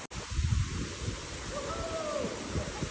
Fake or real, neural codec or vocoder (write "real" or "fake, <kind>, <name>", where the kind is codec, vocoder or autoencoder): real